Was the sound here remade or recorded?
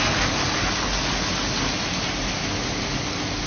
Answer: recorded